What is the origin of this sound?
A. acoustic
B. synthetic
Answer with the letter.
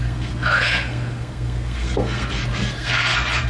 B